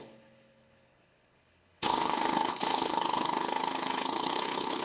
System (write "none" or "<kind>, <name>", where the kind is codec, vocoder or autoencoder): codec, HILCodec